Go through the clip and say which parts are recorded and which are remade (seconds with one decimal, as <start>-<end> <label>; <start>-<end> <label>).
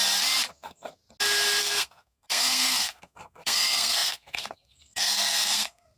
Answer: 0.0-0.5 recorded; 0.5-1.0 remade; 1.0-1.6 recorded; 1.6-6.0 remade